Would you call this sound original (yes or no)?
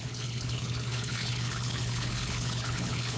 no